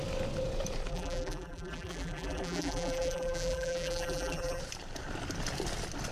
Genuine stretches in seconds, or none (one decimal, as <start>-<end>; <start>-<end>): 0.0-0.9; 4.6-6.1